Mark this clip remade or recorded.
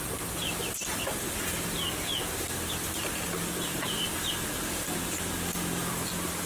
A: recorded